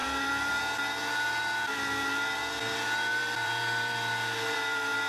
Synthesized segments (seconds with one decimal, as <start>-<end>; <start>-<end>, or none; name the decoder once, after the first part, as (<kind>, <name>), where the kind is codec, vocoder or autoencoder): 0.0-0.6 (vocoder, BigVGAN v2); 1.4-2.4; 3.1-5.1